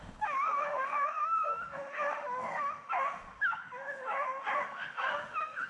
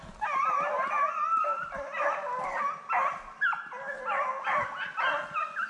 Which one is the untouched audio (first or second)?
second